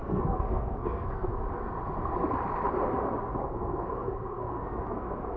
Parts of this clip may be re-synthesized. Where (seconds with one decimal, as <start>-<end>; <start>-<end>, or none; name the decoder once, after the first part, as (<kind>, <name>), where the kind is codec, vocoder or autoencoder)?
0.0-1.3 (codec, SNAC); 3.4-5.4